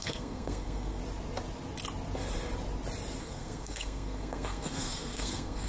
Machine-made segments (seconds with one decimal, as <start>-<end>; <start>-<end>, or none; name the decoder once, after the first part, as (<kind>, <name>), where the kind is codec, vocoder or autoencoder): 0.0-1.0 (codec, SNAC); 3.2-5.7